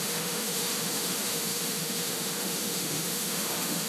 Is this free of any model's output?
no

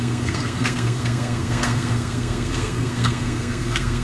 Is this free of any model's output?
no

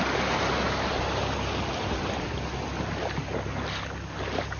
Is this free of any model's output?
yes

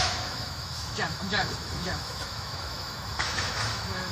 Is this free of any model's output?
no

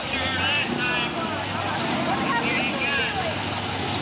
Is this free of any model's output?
yes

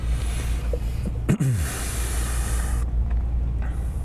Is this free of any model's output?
yes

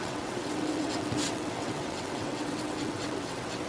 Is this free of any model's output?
no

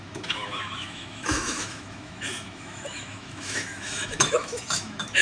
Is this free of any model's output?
no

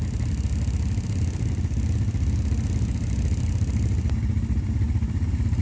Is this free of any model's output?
yes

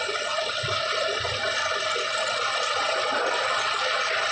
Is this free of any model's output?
yes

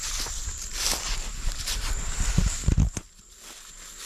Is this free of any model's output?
yes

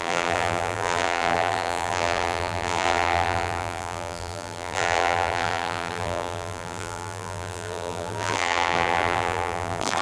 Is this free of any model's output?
no